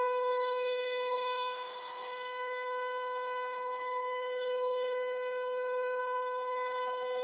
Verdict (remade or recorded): remade